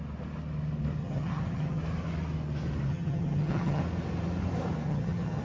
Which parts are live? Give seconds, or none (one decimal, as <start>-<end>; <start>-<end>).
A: 0.0-1.0; 1.8-2.9; 3.8-4.9